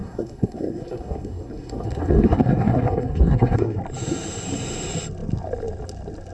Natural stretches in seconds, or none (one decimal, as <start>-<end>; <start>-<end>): 3.8-6.3

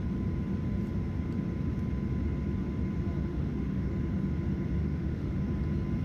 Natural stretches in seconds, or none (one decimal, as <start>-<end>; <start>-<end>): 0.0-3.3; 3.9-4.8; 5.4-6.0

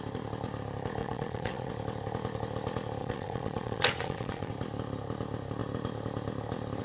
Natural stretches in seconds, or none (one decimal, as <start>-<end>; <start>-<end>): 0.0-1.0; 1.7-3.0; 4.5-6.8

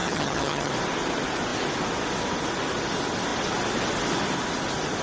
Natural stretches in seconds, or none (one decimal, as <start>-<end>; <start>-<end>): 0.7-5.0

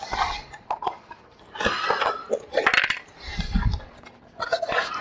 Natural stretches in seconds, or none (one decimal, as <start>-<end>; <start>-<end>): 0.0-5.0

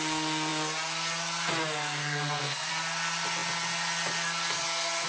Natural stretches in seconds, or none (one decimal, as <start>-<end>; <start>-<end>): 0.0-2.0; 2.7-5.1